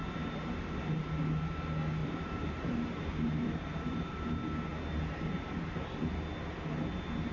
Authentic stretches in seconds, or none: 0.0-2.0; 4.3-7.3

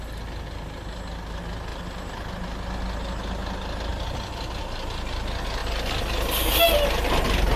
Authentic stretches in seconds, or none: 0.0-1.7; 2.3-3.9; 4.6-7.6